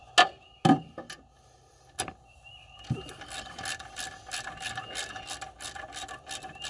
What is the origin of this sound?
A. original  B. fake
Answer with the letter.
A